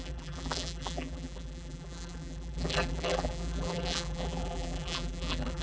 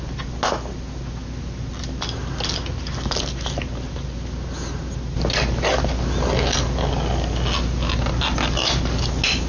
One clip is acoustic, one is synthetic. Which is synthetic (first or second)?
first